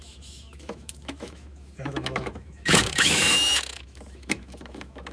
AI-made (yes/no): yes